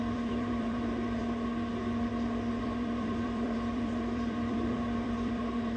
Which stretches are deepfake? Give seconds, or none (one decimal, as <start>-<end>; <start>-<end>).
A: 0.0-1.2; 2.6-5.8